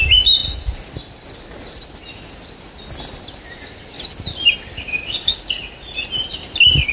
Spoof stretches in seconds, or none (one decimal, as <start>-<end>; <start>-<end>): 4.7-5.6